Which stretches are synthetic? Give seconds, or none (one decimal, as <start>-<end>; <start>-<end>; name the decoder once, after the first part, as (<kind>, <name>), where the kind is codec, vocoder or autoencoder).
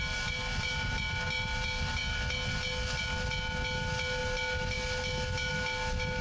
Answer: none